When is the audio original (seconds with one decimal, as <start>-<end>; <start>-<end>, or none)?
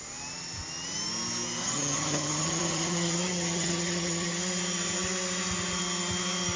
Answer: 0.0-1.6; 4.3-6.6